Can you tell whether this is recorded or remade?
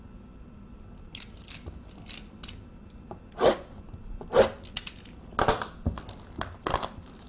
recorded